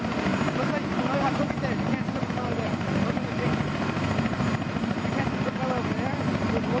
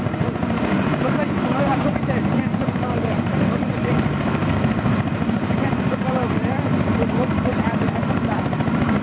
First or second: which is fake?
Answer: second